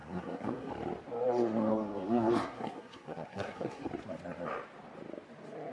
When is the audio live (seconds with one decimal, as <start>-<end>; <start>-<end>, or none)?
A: 0.7-1.7; 3.9-5.7